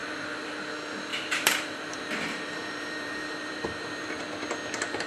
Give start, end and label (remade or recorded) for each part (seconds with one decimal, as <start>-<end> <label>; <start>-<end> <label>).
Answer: 0.0-0.6 remade; 0.6-1.1 recorded; 1.1-4.2 remade; 4.2-5.1 recorded